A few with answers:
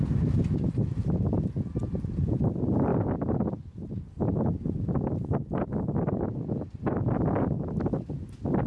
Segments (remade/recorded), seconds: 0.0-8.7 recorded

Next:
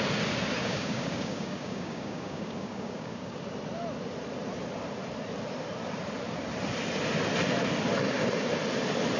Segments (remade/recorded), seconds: 0.0-0.6 recorded; 0.6-3.4 remade; 3.4-9.2 recorded

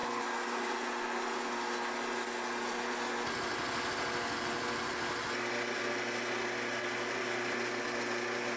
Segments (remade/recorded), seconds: 0.0-8.6 recorded

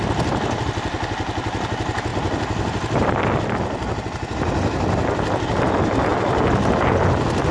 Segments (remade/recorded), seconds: 0.0-7.5 recorded

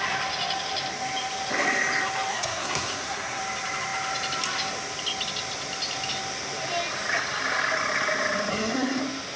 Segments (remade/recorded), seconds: 0.0-2.3 recorded; 2.3-3.4 remade; 3.4-8.5 recorded; 8.5-9.0 remade; 9.0-9.4 recorded